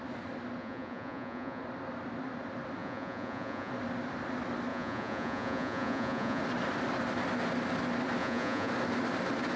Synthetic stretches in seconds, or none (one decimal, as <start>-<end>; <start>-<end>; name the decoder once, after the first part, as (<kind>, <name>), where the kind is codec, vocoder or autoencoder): 0.6-1.6 (vocoder, Vocos); 2.8-3.7; 4.7-6.4; 8.2-8.7